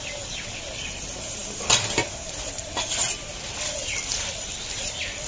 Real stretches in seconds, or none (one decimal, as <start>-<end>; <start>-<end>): none